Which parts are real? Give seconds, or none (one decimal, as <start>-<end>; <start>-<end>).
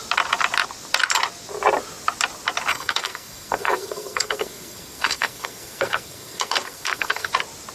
0.0-2.7; 7.3-7.7